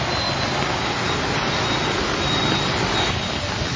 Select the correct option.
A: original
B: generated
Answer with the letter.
A